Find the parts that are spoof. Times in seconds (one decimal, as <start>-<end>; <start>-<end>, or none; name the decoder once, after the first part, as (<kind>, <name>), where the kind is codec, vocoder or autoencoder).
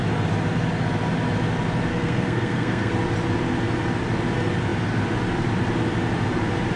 1.9-2.9 (codec, SNAC)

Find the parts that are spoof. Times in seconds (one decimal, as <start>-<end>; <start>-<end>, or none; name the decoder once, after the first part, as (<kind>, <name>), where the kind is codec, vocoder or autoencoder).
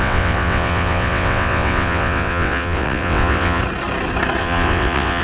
0.0-3.6 (vocoder, WaveNeXt); 4.4-5.2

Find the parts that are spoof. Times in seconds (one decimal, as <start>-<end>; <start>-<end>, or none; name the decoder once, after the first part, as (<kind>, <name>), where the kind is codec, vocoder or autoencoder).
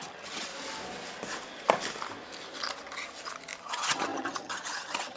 0.0-0.5 (vocoder, HiFi-GAN); 3.6-5.2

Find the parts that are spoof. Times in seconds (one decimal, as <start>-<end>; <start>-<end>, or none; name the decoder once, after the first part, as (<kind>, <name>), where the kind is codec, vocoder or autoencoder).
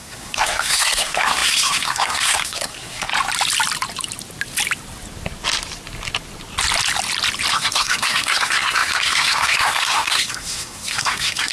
0.0-3.1 (codec, SNAC); 7.5-11.5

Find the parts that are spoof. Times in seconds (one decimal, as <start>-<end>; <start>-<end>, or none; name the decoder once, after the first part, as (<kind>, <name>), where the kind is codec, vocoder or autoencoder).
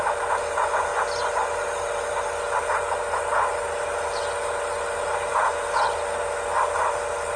none